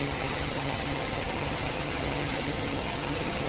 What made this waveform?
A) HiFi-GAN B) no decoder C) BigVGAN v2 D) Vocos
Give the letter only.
A